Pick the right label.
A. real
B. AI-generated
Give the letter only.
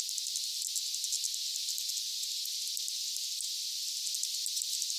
A